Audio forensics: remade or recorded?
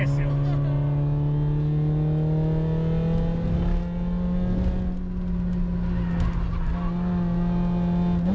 recorded